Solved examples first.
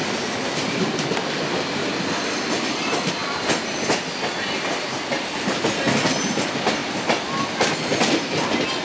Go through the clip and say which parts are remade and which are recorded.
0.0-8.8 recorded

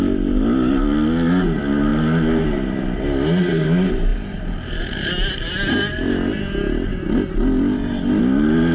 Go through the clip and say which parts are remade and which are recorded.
0.0-8.7 recorded

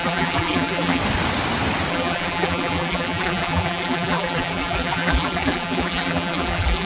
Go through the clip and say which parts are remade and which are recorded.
0.0-1.0 remade; 1.0-1.9 recorded; 1.9-6.9 remade

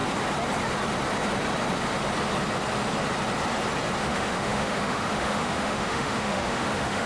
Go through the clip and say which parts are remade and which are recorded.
0.0-4.0 recorded; 4.0-7.1 remade

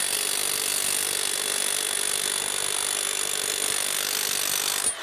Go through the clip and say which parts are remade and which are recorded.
0.0-5.0 recorded

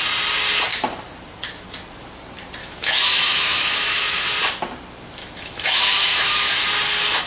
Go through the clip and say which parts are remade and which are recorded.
0.0-2.6 recorded; 2.6-4.3 remade; 4.3-5.2 recorded; 5.2-6.5 remade; 6.5-7.3 recorded

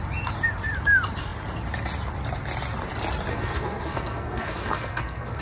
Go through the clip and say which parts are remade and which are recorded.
0.0-3.3 recorded; 3.3-5.4 remade

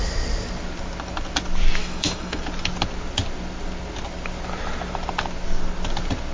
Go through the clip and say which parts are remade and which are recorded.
0.0-1.8 recorded; 1.8-2.4 remade; 2.4-6.3 recorded